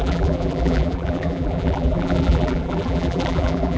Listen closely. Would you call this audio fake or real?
fake